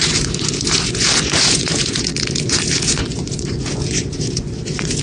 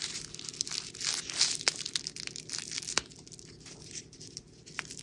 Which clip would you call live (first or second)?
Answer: second